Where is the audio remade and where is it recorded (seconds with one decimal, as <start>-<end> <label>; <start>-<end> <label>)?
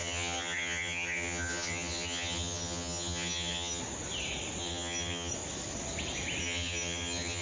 0.0-3.8 remade; 3.8-4.6 recorded; 4.6-5.3 remade; 5.3-6.4 recorded; 6.4-7.4 remade